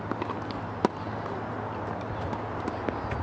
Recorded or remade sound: recorded